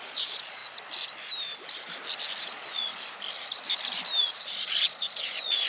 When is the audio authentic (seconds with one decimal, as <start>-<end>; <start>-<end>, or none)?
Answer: 0.6-2.4; 2.9-4.2